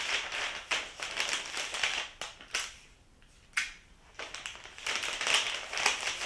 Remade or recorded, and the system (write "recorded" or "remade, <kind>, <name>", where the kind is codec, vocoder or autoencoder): recorded